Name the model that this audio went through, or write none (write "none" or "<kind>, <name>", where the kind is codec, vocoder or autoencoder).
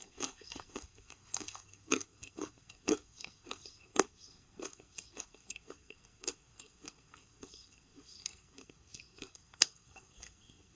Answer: codec, SNAC